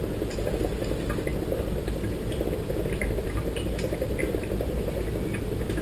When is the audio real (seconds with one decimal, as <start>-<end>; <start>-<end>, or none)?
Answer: 0.0-5.8